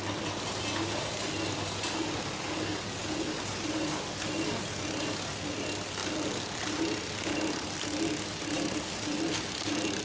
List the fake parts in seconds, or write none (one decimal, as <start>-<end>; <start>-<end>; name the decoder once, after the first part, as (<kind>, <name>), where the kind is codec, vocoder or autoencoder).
none

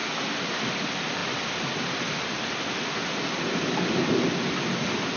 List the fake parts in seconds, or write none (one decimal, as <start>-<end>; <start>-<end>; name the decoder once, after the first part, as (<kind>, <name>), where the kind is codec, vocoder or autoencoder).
none

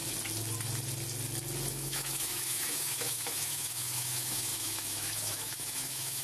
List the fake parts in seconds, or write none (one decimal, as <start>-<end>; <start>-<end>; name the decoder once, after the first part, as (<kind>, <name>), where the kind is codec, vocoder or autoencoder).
1.7-6.2 (autoencoder, DAC-VAE)